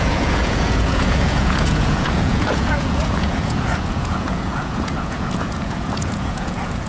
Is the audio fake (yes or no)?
yes